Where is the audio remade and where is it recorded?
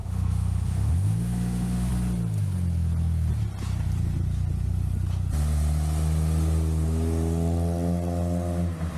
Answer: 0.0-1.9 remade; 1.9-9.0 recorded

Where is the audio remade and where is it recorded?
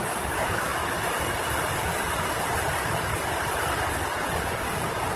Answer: 0.0-5.2 recorded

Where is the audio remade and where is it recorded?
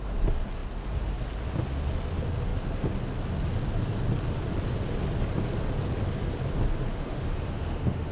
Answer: 0.0-6.9 recorded; 6.9-8.1 remade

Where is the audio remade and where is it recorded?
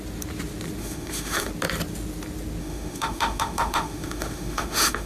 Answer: 0.0-0.8 recorded; 0.8-1.5 remade; 1.5-2.6 recorded; 2.6-5.1 remade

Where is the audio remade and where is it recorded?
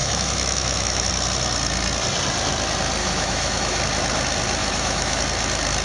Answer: 0.0-1.1 remade; 1.1-3.0 recorded; 3.0-3.8 remade; 3.8-4.6 recorded; 4.6-5.2 remade; 5.2-5.8 recorded